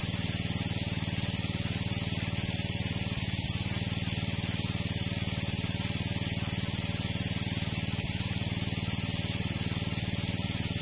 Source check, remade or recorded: recorded